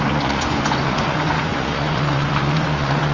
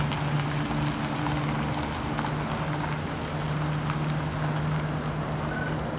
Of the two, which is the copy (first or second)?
first